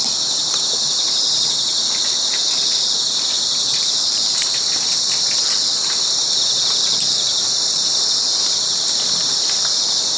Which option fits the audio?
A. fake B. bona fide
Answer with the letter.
B